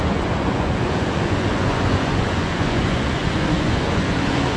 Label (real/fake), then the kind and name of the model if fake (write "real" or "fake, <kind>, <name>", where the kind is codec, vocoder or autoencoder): fake, vocoder, Vocos